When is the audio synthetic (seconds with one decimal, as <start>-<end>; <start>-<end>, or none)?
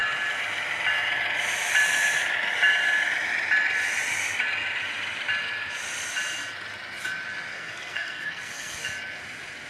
7.5-8.9